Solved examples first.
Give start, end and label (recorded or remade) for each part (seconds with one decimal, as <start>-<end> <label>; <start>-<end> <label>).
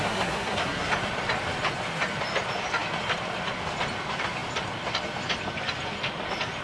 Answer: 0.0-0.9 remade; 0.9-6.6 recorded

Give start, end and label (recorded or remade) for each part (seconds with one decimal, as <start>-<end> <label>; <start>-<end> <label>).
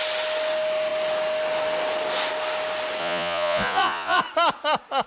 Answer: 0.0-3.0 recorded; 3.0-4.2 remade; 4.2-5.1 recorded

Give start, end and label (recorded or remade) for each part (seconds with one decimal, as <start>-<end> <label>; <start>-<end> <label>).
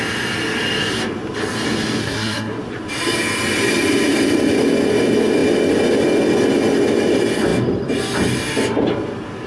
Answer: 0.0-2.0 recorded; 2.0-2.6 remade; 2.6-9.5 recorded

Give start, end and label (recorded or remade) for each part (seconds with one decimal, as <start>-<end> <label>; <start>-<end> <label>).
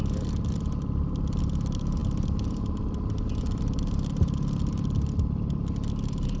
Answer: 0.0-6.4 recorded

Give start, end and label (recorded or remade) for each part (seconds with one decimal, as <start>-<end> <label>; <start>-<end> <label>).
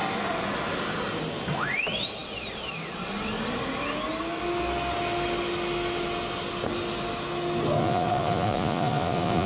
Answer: 0.0-7.8 recorded; 7.8-9.5 remade